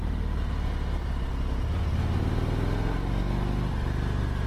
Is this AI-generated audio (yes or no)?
no